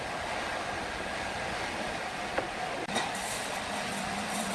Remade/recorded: recorded